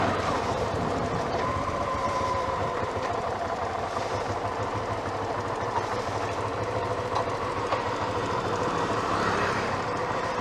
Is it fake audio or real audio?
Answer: fake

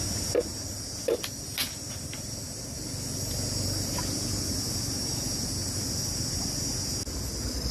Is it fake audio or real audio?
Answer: real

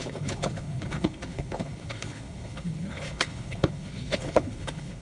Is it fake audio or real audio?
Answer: fake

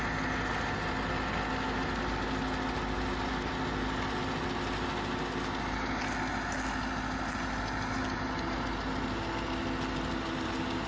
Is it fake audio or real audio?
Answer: real